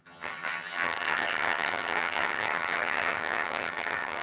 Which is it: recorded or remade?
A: remade